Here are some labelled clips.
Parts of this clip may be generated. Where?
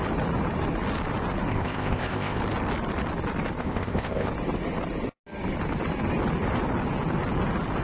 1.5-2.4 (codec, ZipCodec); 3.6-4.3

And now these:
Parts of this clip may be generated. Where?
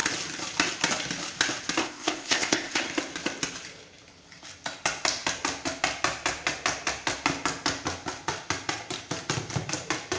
1.8-2.8 (codec, ZipCodec)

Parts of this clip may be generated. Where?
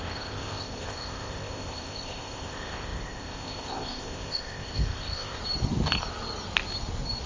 0.0-5.4 (codec, ZipCodec)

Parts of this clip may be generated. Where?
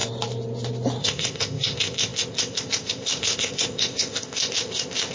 1.0-5.1 (codec, ZipCodec)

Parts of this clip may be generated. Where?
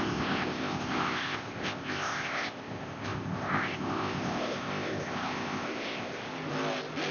0.0-6.3 (codec, ZipCodec)